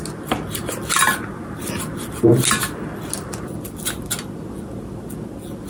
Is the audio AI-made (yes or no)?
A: no